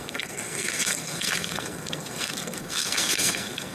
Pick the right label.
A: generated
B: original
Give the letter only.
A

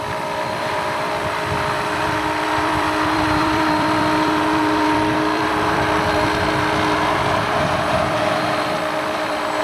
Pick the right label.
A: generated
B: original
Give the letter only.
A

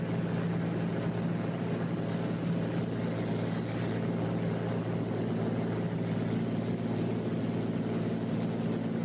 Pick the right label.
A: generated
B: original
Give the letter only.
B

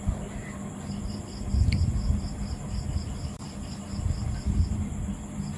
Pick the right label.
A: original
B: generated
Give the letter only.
A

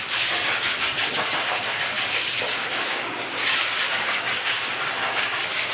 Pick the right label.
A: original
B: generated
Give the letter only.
B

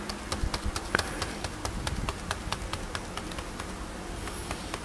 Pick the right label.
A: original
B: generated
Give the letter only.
A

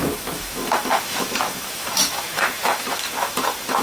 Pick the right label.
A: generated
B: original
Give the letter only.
A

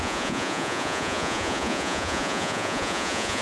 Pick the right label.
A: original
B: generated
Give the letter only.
B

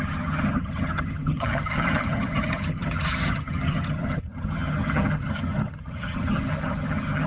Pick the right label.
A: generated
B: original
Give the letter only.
A